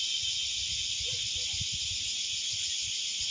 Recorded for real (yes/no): yes